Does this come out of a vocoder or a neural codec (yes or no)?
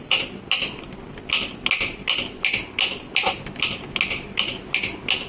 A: no